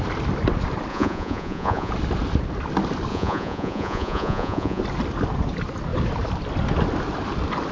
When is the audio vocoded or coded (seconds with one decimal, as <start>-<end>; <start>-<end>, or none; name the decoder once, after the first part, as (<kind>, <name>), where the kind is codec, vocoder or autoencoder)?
0.9-1.9 (vocoder, Vocos); 3.1-4.8